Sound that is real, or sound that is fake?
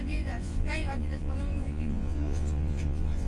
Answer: fake